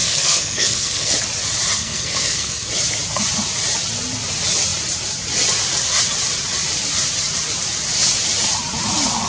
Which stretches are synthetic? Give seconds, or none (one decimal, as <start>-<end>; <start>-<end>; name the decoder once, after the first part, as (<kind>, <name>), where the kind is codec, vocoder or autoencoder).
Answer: 0.0-1.1 (codec, SNAC); 1.8-2.7